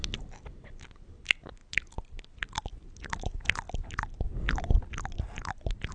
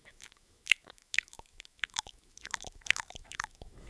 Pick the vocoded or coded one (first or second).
second